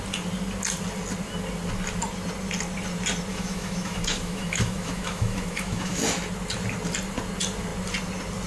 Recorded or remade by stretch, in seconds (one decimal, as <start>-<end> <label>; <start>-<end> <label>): 0.0-3.3 recorded; 3.3-6.0 remade; 6.0-8.5 recorded